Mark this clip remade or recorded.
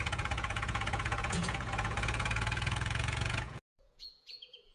remade